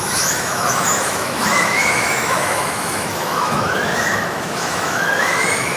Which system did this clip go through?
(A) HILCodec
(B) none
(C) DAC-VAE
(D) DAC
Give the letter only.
C